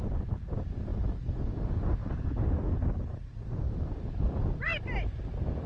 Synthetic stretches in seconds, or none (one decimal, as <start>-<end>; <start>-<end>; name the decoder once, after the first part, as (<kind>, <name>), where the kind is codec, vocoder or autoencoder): none